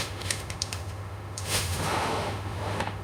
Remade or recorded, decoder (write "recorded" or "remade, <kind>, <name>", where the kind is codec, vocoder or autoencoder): remade, autoencoder, DAC-VAE